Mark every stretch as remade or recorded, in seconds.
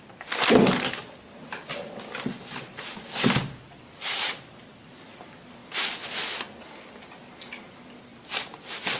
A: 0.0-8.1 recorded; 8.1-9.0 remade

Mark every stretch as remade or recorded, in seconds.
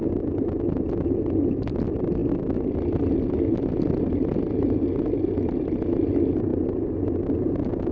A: 0.0-7.9 recorded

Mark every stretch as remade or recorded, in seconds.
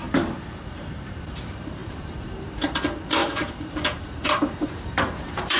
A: 0.0-5.6 remade